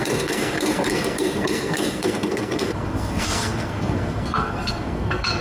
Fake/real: fake